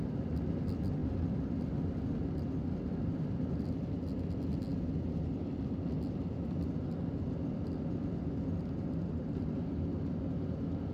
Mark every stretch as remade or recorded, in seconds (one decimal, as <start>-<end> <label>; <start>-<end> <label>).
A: 0.0-10.9 recorded